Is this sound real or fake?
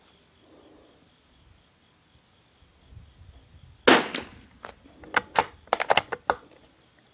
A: real